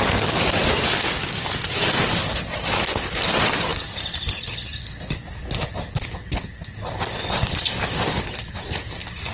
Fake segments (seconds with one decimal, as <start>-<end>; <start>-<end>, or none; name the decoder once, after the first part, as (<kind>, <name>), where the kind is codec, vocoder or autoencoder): 0.0-0.6 (vocoder, BigVGAN v2); 2.1-9.3